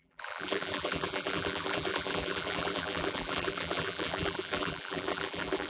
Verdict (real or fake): fake